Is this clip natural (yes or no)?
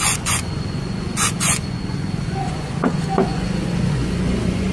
no